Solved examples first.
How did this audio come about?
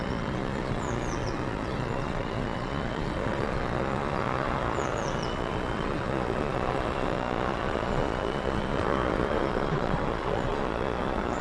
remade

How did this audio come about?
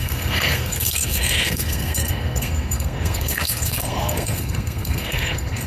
remade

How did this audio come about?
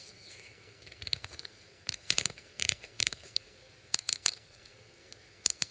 remade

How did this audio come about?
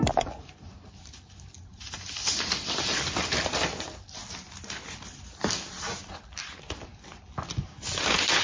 recorded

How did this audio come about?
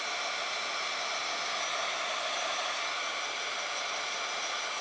recorded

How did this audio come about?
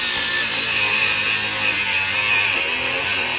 recorded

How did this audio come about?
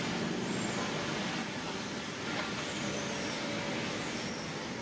recorded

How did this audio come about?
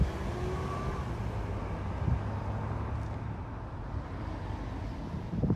recorded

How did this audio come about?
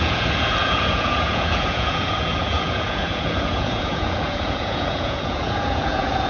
remade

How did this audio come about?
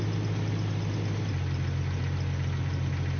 recorded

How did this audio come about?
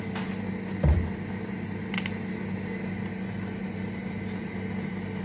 recorded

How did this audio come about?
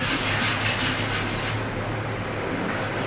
recorded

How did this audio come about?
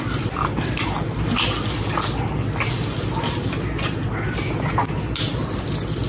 recorded